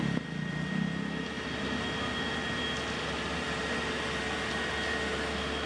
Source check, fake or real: real